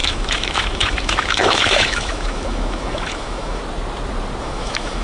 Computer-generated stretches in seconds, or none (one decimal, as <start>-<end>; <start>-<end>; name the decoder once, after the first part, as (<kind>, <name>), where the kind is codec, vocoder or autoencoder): 0.0-3.6 (autoencoder, DAC-VAE); 4.4-5.0